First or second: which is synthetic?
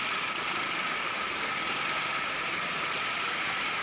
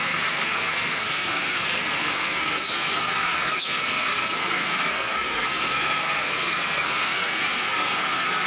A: second